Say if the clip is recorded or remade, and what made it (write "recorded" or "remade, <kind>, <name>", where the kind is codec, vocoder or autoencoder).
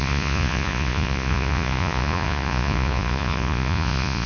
remade, vocoder, Vocos